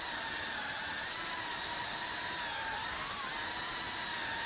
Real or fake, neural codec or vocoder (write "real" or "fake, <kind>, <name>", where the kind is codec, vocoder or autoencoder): real